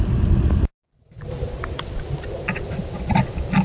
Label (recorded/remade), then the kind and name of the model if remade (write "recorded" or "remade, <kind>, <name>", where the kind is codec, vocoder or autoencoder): recorded